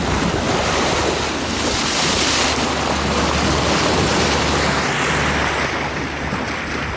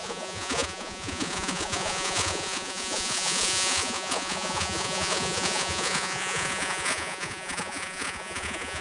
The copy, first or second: second